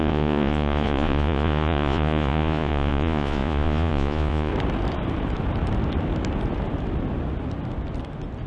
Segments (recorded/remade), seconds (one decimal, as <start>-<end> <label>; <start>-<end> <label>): 0.0-4.5 remade; 4.5-8.5 recorded